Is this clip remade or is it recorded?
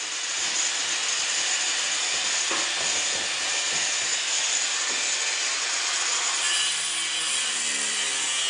recorded